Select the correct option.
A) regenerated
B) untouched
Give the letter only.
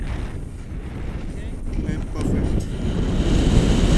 B